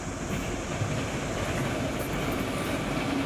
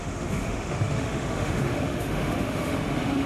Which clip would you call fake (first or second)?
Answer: second